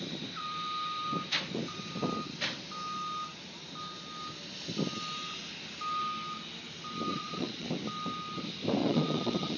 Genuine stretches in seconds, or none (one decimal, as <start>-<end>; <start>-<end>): 0.0-7.1; 7.7-8.8